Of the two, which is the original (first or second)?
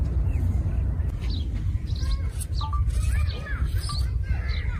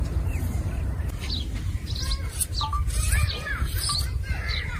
first